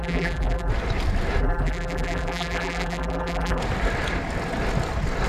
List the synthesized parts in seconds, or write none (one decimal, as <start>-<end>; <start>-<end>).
0.0-0.7; 1.4-3.6